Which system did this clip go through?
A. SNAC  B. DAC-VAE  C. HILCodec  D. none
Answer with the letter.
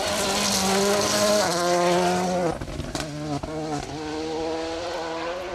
D